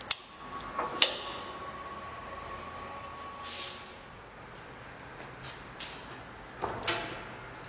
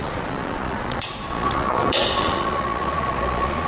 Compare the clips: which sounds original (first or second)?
first